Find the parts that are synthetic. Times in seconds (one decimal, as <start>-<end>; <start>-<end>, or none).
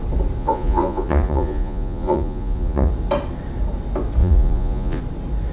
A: 0.4-2.9; 4.2-5.0